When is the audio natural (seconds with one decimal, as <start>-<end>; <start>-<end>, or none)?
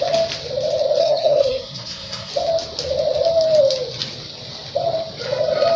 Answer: 0.0-1.0; 2.3-5.8